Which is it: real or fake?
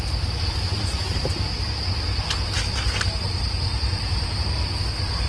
real